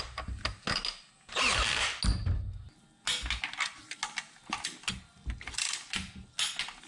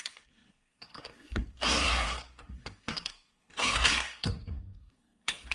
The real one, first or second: first